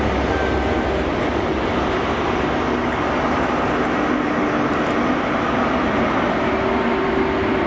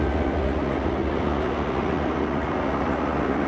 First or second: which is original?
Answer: first